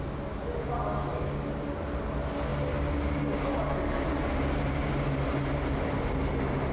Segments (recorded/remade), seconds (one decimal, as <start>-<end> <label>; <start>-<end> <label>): 0.0-6.7 recorded